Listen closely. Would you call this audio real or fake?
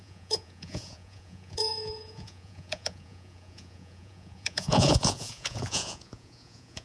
fake